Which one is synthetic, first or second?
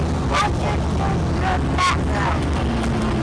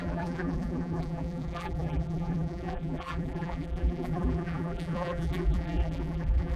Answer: second